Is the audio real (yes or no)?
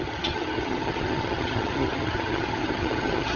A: no